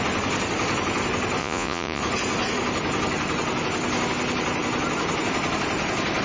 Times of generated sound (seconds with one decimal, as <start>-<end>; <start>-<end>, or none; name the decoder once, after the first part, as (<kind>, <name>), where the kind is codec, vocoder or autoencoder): 1.4-2.0 (vocoder, Vocos)